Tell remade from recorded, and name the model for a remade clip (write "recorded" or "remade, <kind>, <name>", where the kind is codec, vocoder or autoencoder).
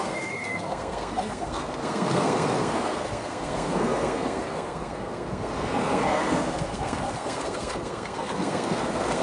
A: remade, codec, SNAC